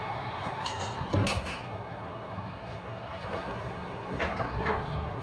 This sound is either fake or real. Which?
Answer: fake